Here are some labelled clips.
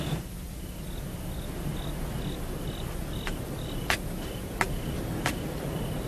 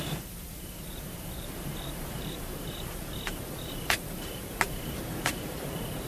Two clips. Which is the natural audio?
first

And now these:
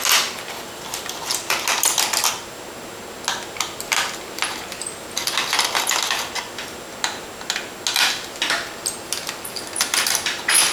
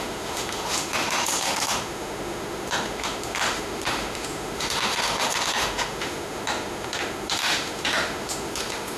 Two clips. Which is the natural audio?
first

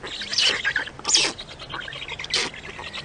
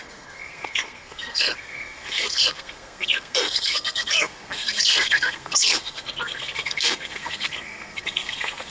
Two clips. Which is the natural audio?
first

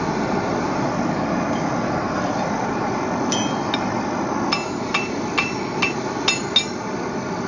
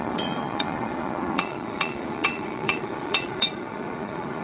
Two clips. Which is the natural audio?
first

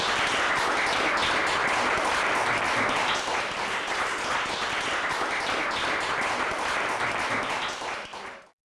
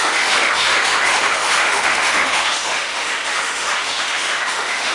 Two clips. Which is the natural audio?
first